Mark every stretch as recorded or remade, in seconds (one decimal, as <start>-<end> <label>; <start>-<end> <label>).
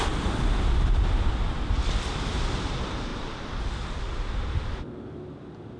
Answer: 0.0-5.8 recorded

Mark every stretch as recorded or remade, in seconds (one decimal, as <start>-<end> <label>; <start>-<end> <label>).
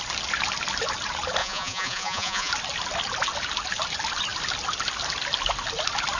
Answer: 0.0-1.4 recorded; 1.4-2.5 remade; 2.5-6.2 recorded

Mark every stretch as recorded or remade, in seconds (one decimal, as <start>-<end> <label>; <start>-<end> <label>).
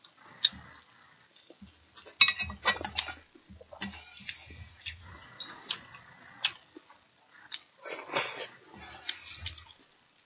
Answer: 0.0-4.7 recorded; 4.7-5.7 remade; 5.7-10.2 recorded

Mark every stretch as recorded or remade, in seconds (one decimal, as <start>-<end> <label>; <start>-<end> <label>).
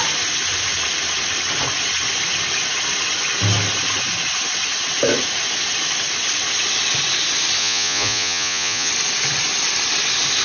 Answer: 0.0-7.6 recorded; 7.6-8.9 remade; 8.9-10.4 recorded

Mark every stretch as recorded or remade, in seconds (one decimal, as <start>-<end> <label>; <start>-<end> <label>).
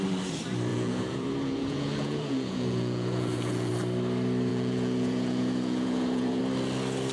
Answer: 0.0-0.7 recorded; 0.7-3.7 remade; 3.7-4.5 recorded; 4.5-6.4 remade; 6.4-7.1 recorded